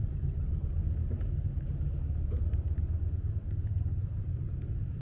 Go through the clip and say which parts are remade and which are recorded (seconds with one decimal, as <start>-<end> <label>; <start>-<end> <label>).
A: 0.0-0.8 remade; 0.8-3.8 recorded; 3.8-5.0 remade